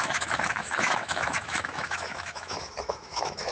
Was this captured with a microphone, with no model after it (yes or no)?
no